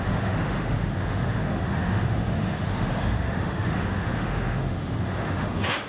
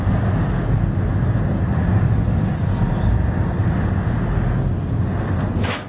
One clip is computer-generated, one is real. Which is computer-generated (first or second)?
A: first